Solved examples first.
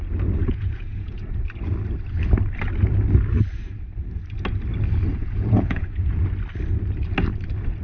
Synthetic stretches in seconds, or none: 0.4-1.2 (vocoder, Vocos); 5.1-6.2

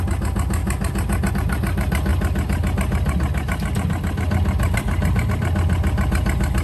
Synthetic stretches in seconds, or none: none